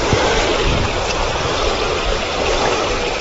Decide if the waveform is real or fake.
real